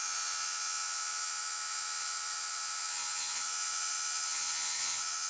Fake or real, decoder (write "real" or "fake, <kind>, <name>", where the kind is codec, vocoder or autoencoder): fake, vocoder, Vocos